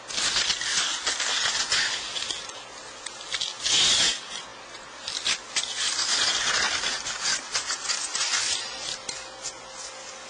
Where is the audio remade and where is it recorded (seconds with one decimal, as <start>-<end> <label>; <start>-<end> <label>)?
0.0-10.3 recorded